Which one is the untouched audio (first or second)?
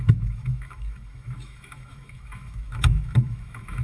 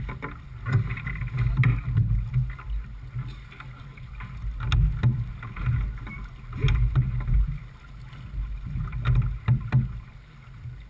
second